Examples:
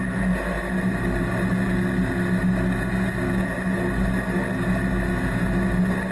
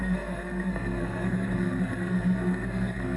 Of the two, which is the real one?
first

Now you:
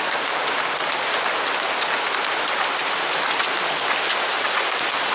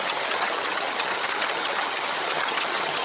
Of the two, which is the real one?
first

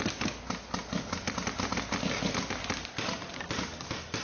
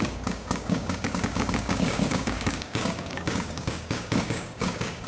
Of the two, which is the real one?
first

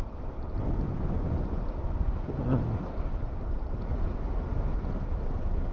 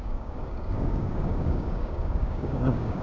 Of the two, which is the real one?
first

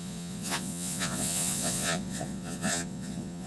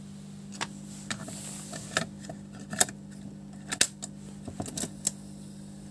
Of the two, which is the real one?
second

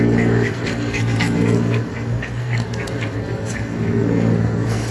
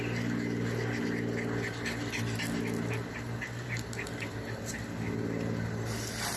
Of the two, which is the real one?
second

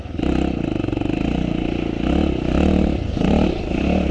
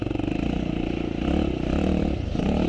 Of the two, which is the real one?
first